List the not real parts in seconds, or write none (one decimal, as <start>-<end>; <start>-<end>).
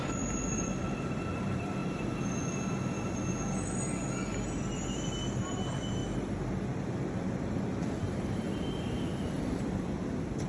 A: 0.0-1.8; 4.3-10.5